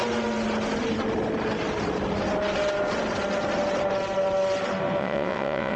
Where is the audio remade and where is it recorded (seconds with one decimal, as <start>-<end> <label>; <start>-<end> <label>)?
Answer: 0.0-5.0 recorded; 5.0-5.8 remade